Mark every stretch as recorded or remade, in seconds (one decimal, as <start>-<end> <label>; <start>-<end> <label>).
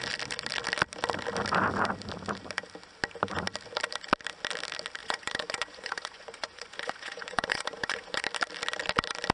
0.0-5.0 recorded; 5.0-8.2 remade; 8.2-9.3 recorded